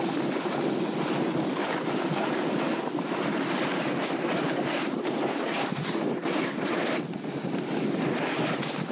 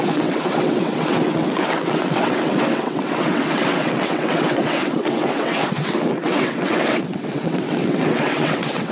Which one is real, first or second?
first